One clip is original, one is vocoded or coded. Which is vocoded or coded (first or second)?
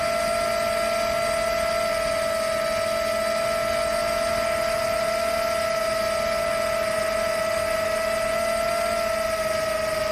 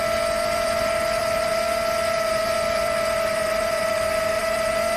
second